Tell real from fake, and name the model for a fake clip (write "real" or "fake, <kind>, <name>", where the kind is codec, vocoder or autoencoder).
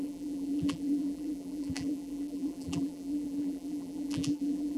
fake, vocoder, BigVGAN v2